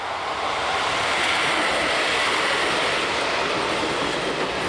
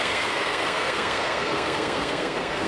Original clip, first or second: first